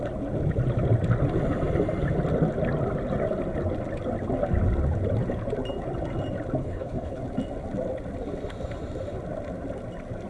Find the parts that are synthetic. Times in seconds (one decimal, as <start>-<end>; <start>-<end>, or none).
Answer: 6.6-7.2